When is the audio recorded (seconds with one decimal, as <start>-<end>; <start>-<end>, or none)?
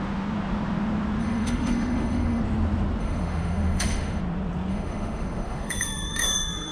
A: 0.0-1.2; 2.4-3.0; 4.2-4.7